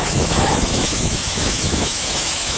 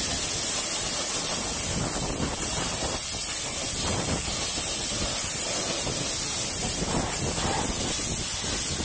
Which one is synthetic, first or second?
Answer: first